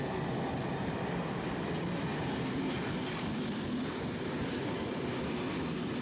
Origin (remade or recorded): recorded